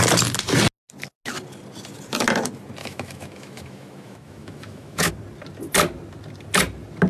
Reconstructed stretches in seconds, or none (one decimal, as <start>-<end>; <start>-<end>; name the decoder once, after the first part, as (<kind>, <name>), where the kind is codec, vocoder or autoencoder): 2.8-5.1 (autoencoder, DAC-VAE)